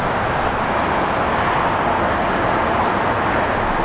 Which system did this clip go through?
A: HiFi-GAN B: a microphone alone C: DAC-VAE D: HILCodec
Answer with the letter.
B